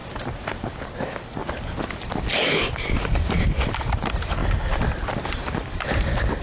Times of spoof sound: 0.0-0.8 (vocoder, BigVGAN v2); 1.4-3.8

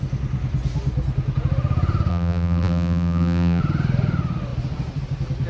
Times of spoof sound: 2.1-3.6 (vocoder, BigVGAN v2)

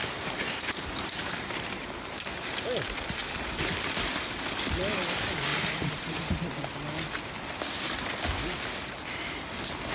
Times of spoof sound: 0.0-2.1 (vocoder, BigVGAN v2); 5.5-6.2

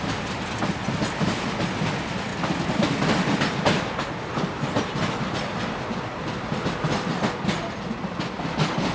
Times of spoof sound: none

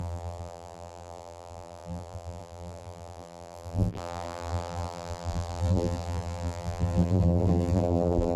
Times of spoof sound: 0.0-8.4 (vocoder, BigVGAN v2)

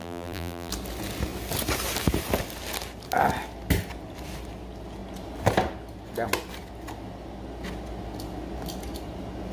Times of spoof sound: 0.0-0.7 (vocoder, BigVGAN v2)